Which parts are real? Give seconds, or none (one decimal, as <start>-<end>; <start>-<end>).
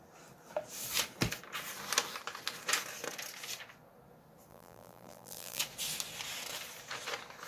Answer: 0.0-4.5; 5.6-7.5